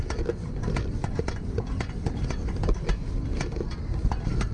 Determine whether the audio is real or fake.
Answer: real